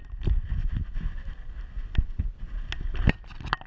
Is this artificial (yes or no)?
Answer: no